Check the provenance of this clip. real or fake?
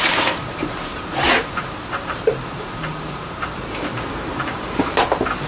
fake